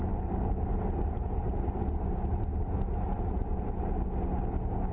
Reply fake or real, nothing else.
real